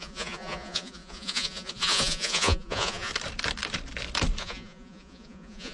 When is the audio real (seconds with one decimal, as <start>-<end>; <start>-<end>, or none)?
3.1-4.4